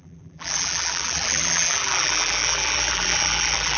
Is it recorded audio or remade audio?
remade